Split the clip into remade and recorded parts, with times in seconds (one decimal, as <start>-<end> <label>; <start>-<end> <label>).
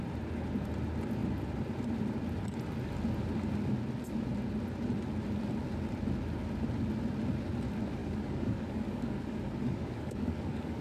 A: 0.0-8.0 recorded; 8.0-10.8 remade